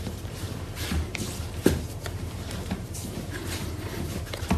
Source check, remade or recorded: remade